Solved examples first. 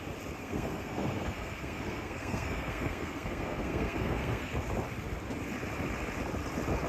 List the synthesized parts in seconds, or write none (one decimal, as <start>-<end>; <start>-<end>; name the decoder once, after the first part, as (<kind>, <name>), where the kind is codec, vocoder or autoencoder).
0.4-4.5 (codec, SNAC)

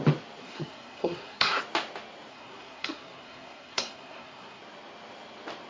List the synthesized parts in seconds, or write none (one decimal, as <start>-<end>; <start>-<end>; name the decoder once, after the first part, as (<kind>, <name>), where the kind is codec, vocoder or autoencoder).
0.4-1.6 (codec, SNAC); 2.3-4.6

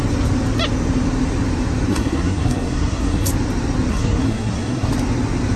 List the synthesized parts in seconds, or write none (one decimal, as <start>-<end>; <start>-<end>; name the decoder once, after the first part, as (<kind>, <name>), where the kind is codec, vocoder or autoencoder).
1.9-3.3 (codec, SNAC); 3.9-4.9